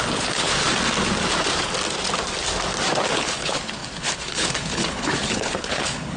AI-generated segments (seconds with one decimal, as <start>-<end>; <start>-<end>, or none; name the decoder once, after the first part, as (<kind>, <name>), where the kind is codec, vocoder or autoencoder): 0.0-0.5 (codec, HILCodec); 3.1-6.2